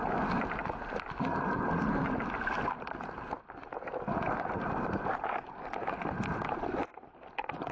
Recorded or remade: recorded